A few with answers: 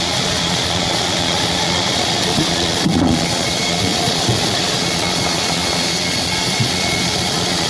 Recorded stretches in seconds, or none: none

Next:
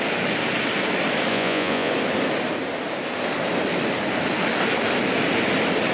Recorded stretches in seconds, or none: 0.0-1.3; 1.9-5.9

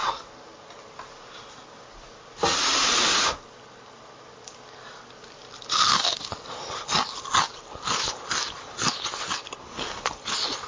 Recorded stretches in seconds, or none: 0.0-10.7

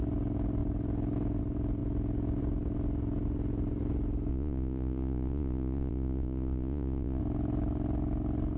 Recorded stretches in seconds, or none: 0.0-4.3; 7.2-8.6

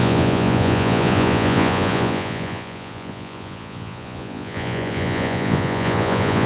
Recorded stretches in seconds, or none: none